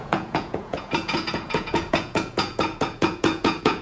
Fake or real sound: fake